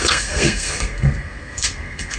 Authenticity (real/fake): fake